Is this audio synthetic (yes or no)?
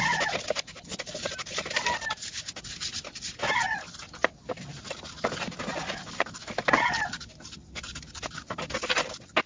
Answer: no